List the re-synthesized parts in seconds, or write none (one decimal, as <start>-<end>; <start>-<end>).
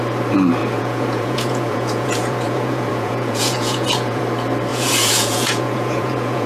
0.6-4.2; 4.7-6.5